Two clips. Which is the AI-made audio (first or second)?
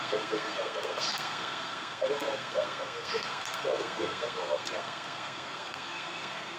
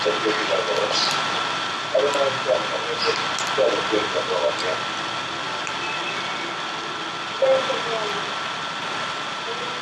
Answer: first